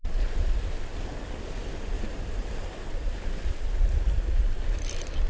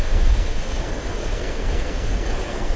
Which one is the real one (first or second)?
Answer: first